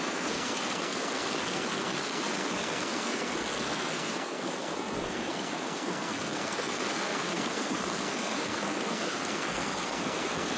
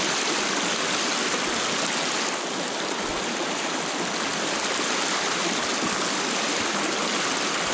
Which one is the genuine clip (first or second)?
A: second